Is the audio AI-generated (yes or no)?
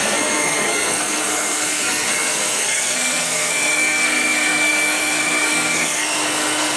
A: yes